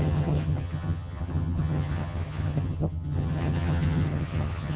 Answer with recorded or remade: remade